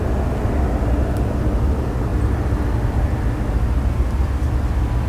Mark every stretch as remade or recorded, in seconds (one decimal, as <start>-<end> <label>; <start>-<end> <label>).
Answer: 0.0-5.1 recorded